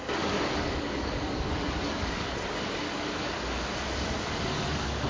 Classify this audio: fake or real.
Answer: fake